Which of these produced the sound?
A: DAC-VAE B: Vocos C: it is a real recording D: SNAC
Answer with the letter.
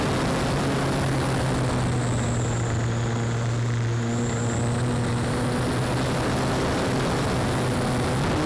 C